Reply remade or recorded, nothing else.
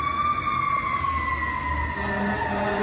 recorded